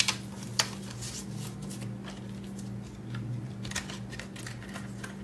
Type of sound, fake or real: real